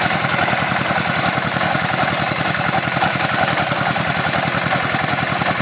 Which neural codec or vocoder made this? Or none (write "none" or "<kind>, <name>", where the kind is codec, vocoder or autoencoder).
none